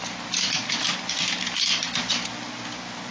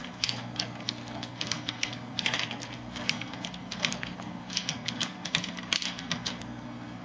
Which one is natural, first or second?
first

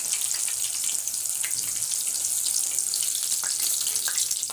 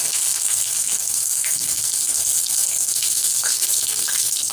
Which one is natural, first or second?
first